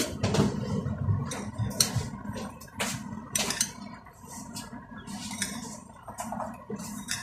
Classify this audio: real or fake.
fake